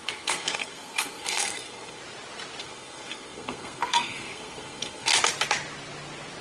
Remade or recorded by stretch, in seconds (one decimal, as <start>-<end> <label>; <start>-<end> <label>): 0.0-2.0 remade; 2.0-2.6 recorded; 2.6-5.1 remade; 5.1-6.4 recorded